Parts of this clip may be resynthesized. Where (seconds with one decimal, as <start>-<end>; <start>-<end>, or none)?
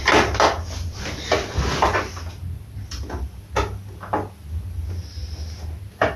none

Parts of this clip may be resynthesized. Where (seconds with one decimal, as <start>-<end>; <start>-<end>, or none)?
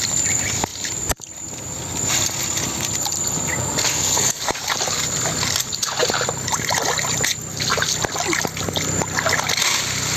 3.9-4.4